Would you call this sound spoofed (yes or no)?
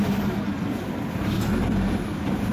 yes